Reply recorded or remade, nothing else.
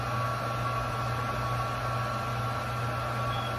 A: recorded